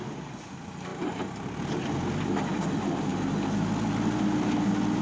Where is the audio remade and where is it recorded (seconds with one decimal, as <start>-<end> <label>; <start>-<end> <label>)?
0.0-5.0 recorded